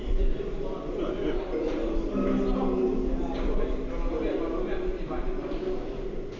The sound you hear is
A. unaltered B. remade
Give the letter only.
A